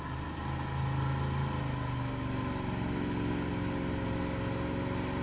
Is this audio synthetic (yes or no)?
no